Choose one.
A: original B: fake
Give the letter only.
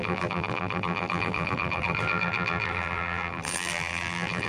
B